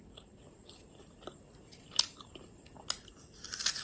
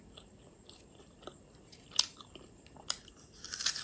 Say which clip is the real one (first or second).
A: first